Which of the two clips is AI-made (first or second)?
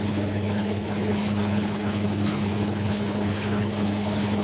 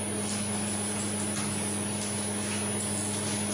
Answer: first